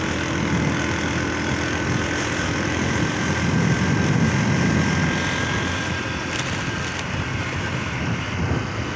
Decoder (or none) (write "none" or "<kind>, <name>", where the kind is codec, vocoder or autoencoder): none